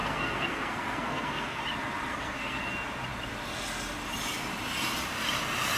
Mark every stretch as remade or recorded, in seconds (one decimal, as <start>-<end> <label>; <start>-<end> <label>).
0.0-1.6 remade; 1.6-2.1 recorded; 2.1-2.7 remade; 2.7-5.8 recorded